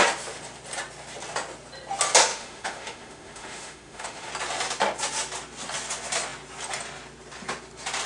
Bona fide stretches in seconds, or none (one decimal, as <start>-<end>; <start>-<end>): 0.0-2.3; 4.3-8.1